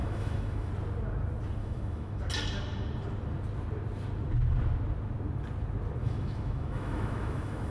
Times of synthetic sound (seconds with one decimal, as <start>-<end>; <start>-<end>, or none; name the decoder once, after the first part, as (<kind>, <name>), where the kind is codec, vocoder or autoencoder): 0.0-0.7 (autoencoder, DAC-VAE); 1.6-2.2; 6.0-7.7